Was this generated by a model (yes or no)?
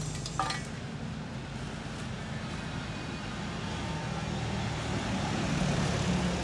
no